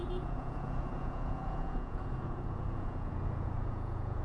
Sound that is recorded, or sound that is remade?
remade